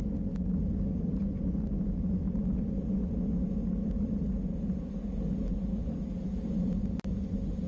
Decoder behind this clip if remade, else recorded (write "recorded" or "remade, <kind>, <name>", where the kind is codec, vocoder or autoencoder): recorded